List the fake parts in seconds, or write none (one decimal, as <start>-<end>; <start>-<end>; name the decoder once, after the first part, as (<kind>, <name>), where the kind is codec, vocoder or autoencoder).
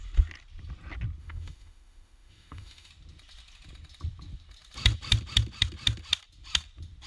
1.2-2.9 (autoencoder, DAC-VAE)